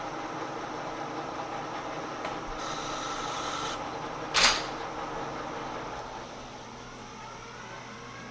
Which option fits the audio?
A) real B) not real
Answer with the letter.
A